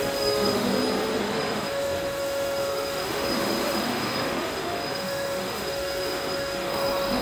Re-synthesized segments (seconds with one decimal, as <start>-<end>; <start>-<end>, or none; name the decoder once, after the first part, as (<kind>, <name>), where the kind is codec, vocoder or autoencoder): 0.0-0.7 (autoencoder, DAC-VAE); 1.2-7.2